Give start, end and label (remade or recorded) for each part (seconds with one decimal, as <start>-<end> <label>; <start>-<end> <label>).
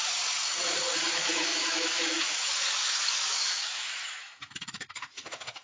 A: 0.0-1.1 recorded; 1.1-5.6 remade